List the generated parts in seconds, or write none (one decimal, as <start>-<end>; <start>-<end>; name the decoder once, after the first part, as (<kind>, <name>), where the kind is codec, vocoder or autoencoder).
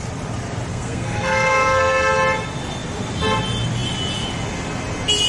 0.7-2.1 (codec, SNAC)